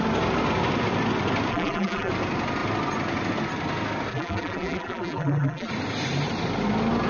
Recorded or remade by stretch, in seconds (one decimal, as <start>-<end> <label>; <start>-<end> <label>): 0.0-1.5 recorded; 1.5-2.1 remade; 2.1-4.1 recorded; 4.1-5.7 remade; 5.7-7.1 recorded